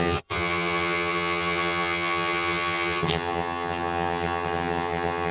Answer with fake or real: fake